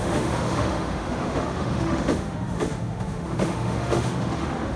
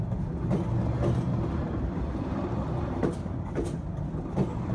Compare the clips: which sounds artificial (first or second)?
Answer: first